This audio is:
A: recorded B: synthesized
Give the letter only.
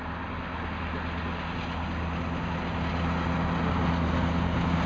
A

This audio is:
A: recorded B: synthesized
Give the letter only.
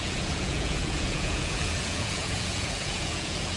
B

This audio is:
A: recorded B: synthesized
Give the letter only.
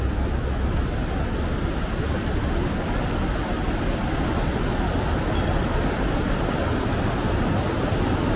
A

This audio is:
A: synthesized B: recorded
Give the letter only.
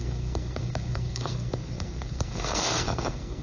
A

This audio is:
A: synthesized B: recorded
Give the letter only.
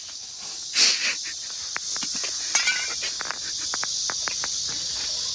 B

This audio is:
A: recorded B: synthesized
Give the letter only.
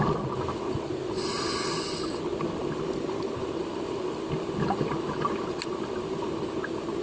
A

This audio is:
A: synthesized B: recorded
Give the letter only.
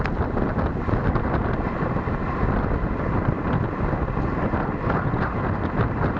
B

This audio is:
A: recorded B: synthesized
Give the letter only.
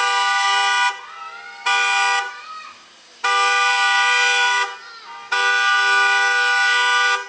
A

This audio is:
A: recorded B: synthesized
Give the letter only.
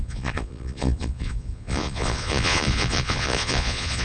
B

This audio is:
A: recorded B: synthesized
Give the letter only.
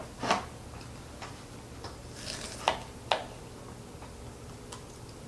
A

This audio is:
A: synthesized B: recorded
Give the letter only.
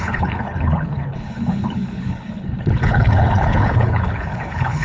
A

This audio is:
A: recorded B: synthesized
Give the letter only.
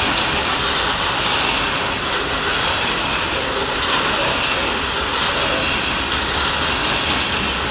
A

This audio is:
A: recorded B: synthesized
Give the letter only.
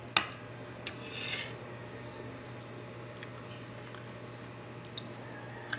A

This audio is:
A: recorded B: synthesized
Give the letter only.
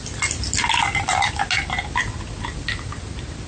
A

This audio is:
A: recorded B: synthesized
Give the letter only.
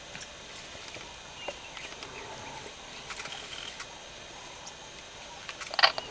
A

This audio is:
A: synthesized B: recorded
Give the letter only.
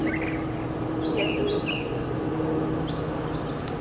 B